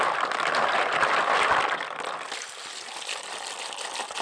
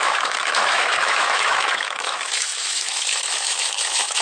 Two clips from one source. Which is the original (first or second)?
first